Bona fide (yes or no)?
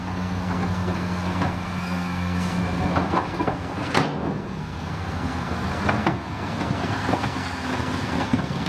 no